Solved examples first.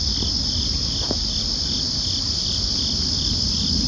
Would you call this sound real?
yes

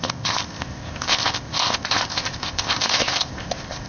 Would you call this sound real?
no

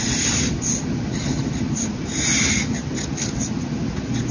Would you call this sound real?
yes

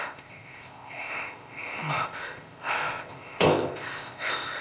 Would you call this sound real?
no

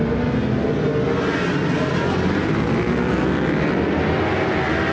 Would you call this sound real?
yes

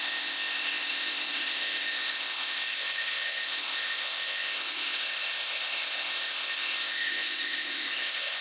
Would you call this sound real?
no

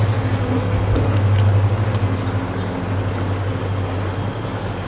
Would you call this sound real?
yes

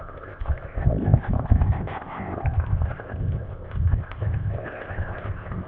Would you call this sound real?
no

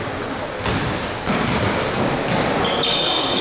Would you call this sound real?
yes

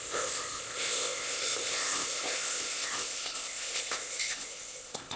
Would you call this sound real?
no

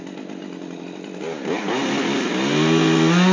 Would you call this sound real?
yes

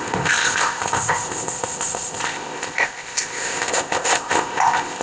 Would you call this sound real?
no